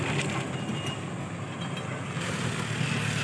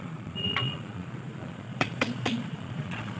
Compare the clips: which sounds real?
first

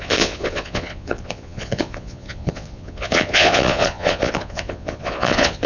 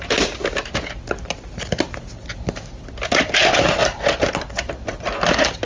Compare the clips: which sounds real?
second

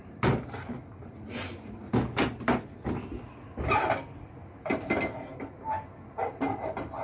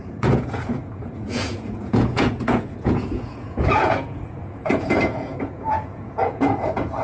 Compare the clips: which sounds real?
first